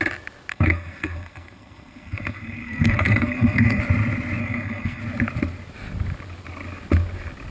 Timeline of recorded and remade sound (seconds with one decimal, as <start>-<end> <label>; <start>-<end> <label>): 0.0-0.5 recorded; 0.5-3.8 remade; 3.8-4.4 recorded; 4.4-5.0 remade; 5.0-7.5 recorded